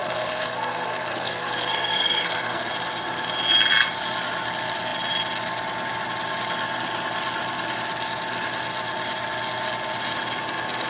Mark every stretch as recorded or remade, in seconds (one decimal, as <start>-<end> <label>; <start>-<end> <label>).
0.0-2.7 remade; 2.7-10.9 recorded